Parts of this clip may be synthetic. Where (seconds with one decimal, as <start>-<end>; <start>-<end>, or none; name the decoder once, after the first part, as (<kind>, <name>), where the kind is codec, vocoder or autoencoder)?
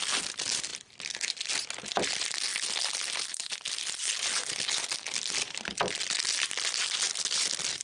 none